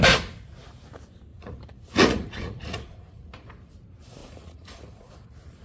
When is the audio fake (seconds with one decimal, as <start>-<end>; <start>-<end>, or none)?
1.3-3.5; 4.2-5.1